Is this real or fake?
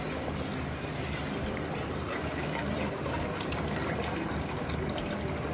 real